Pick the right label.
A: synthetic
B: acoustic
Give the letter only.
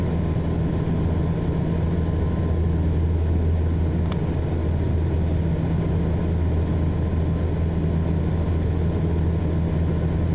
B